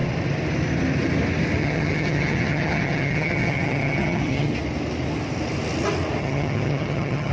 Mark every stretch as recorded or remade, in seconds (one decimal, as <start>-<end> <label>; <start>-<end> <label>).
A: 0.0-1.6 recorded; 1.6-4.5 remade; 4.5-6.2 recorded; 6.2-7.3 remade